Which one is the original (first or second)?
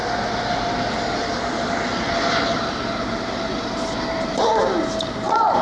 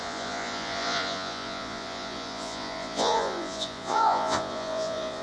first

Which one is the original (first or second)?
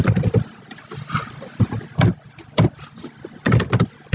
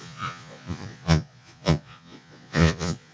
first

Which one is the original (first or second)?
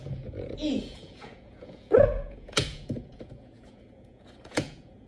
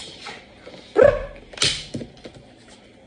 second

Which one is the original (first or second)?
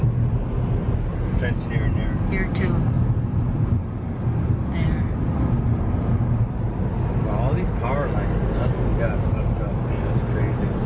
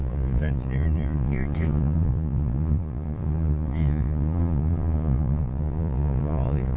first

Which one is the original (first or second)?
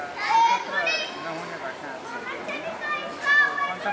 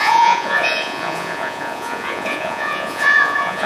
first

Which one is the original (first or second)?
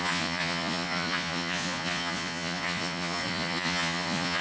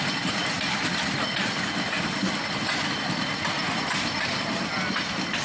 second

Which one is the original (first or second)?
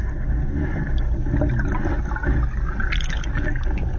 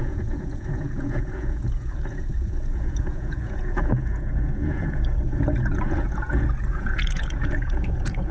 first